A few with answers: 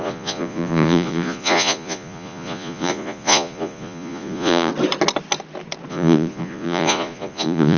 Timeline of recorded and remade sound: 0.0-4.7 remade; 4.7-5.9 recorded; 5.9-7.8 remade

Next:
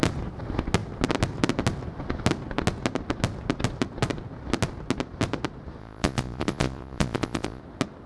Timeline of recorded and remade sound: 0.0-5.8 recorded; 5.8-7.6 remade; 7.6-8.1 recorded

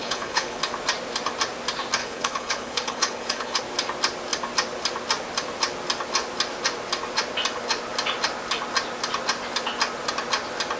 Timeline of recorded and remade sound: 0.0-0.6 remade; 0.6-2.0 recorded; 2.0-3.6 remade; 3.6-10.8 recorded

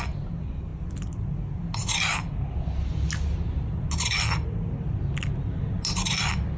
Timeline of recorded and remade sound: 0.0-6.6 recorded

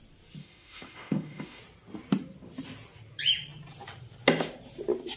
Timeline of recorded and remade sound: 0.0-0.4 recorded; 0.4-1.6 remade; 1.6-5.2 recorded

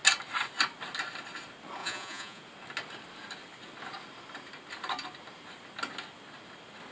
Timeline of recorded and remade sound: 0.0-1.8 recorded; 1.8-2.4 remade; 2.4-6.9 recorded

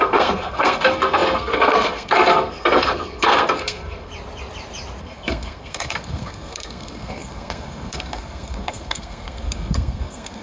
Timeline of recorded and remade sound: 0.0-4.1 remade; 4.1-5.0 recorded; 5.0-10.4 remade